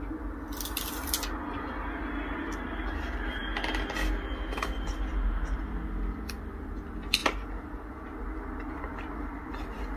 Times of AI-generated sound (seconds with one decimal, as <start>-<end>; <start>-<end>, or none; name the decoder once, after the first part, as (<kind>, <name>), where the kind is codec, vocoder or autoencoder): none